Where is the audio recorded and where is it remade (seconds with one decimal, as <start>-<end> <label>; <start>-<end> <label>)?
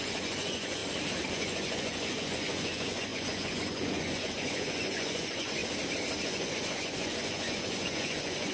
0.0-0.8 remade; 0.8-1.3 recorded; 1.3-5.6 remade; 5.6-6.2 recorded; 6.2-8.5 remade